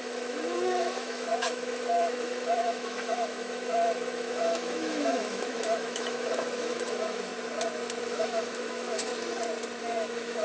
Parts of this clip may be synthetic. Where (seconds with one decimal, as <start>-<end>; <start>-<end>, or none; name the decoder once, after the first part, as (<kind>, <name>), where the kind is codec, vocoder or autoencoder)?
0.0-7.3 (autoencoder, DAC-VAE); 8.0-9.1; 9.8-10.4